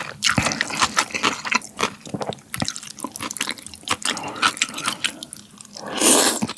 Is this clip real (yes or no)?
yes